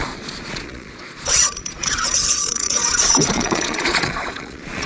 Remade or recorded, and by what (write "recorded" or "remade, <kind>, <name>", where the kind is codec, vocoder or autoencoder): remade, vocoder, Vocos